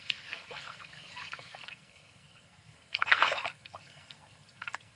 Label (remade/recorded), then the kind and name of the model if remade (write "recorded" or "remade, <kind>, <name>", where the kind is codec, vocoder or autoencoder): remade, codec, SNAC